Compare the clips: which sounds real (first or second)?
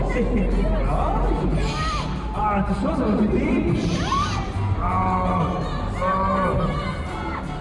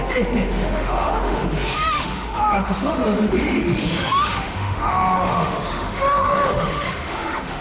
first